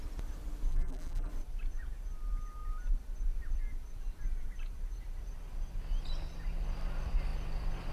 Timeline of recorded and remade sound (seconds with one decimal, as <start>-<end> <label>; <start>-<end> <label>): 0.0-0.7 recorded; 0.7-1.3 remade; 1.3-7.9 recorded